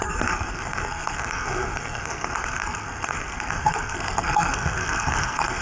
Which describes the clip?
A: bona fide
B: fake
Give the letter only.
B